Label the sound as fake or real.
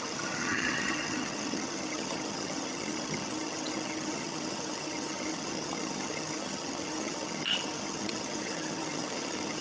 fake